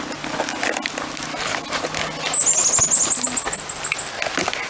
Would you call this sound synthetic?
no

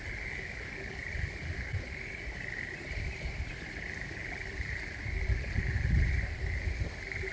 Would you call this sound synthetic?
no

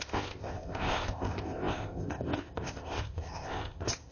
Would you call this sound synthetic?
yes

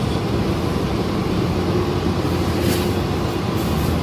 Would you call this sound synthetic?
no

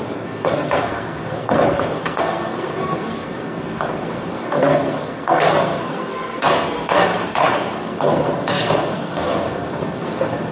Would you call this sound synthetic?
yes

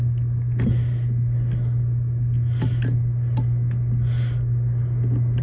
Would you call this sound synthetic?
no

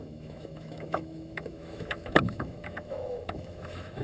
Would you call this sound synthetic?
yes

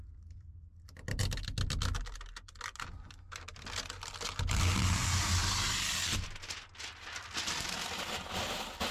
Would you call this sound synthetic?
no